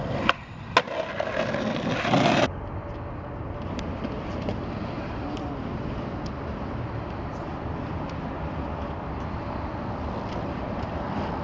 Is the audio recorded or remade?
recorded